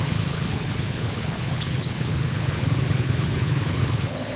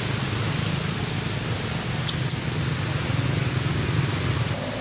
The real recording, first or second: second